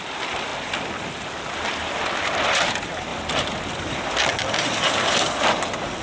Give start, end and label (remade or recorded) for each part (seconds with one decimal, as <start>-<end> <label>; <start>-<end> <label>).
0.0-6.0 recorded